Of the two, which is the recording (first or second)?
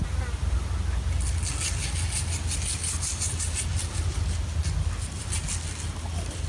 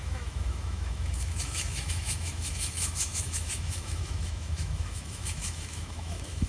first